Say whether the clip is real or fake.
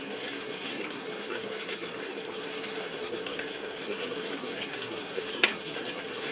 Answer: fake